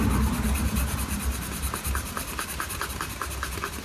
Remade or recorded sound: recorded